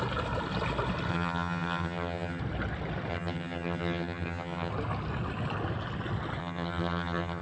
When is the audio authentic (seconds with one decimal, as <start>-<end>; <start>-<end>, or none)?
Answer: 0.0-1.1; 2.4-3.1; 4.7-6.4